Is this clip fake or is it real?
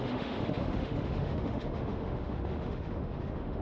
fake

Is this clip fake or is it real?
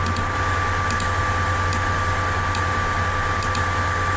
real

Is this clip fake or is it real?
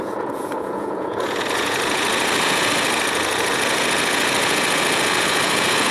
fake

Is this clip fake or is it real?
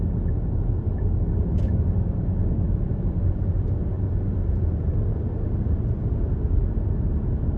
real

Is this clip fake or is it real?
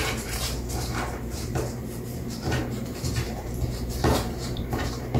fake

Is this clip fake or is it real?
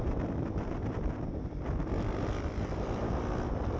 real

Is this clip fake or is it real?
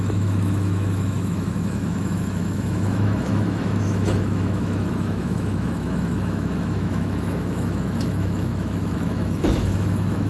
fake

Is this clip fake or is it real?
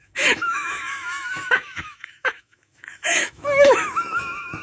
fake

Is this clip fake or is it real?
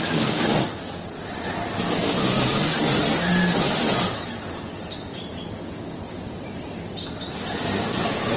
fake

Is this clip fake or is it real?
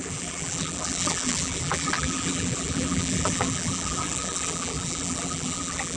fake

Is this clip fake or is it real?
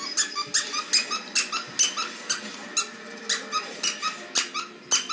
real